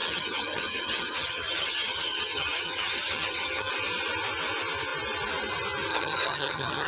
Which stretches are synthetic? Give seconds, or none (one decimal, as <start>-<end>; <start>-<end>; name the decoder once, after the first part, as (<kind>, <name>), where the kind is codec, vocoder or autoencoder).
0.0-3.7 (vocoder, HiFi-GAN); 5.9-6.9